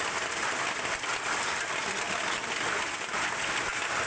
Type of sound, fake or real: real